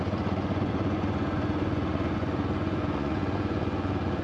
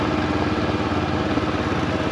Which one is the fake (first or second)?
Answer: first